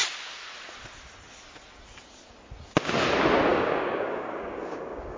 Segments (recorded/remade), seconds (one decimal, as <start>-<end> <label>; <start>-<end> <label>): 0.0-3.5 recorded; 3.5-5.2 remade

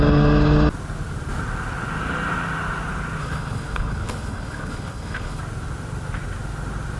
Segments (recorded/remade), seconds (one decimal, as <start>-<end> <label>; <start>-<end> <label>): 0.0-3.2 recorded; 3.2-5.4 remade; 5.4-7.0 recorded